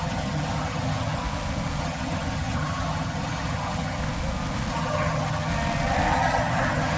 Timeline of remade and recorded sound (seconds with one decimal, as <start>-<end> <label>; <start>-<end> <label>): 0.0-1.2 remade; 1.2-1.8 recorded; 1.8-4.0 remade; 4.0-4.7 recorded; 4.7-5.5 remade; 5.5-6.1 recorded; 6.1-7.0 remade